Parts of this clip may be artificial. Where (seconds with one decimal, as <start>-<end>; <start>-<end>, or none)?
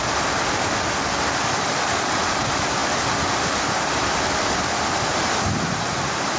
none